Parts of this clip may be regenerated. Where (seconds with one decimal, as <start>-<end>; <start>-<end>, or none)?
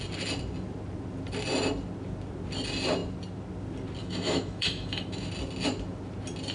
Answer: 4.0-5.3